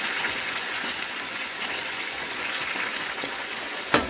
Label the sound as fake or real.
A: fake